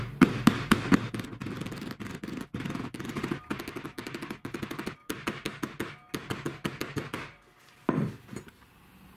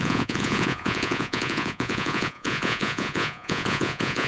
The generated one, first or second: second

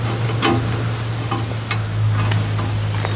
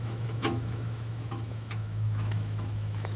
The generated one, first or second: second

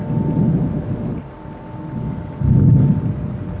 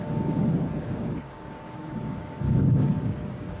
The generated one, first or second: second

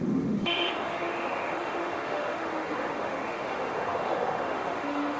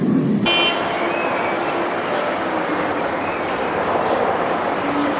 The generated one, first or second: first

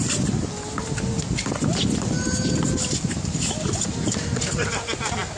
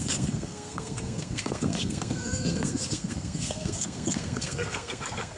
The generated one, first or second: second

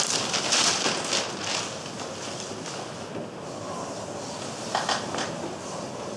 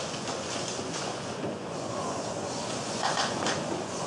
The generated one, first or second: second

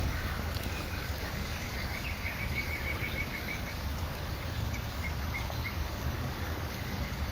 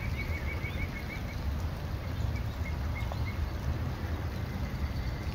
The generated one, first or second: first